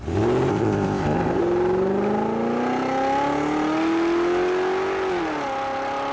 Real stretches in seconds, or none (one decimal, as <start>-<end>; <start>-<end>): 0.0-0.5; 1.4-6.1